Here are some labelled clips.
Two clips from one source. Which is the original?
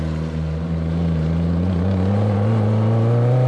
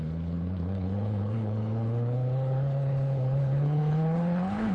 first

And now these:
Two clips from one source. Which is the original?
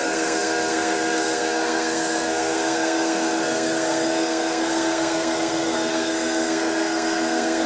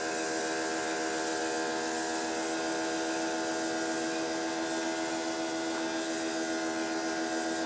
second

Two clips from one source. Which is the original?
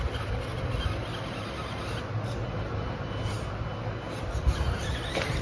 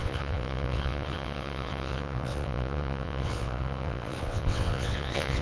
first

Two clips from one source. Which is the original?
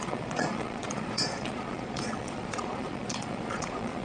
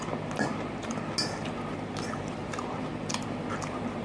second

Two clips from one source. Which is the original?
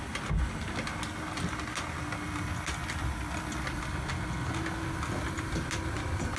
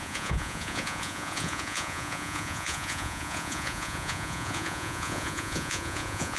first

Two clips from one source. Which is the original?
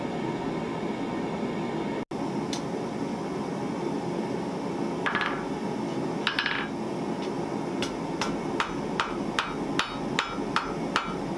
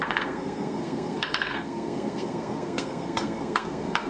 first